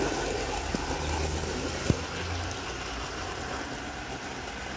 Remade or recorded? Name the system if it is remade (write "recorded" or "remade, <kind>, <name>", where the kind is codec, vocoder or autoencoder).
recorded